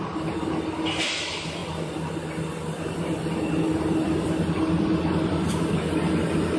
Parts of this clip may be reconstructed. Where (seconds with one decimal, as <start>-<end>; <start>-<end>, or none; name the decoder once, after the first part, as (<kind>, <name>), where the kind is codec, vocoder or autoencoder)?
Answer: none